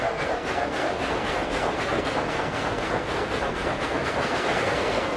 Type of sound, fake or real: fake